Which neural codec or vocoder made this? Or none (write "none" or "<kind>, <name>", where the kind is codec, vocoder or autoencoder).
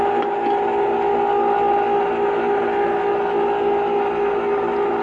none